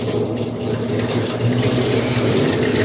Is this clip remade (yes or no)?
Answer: yes